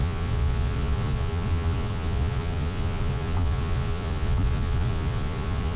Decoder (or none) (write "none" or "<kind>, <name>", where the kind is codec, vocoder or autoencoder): vocoder, Vocos